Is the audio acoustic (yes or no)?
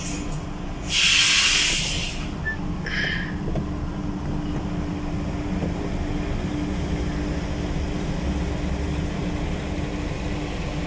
yes